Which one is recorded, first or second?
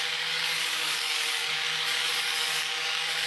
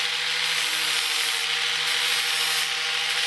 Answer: second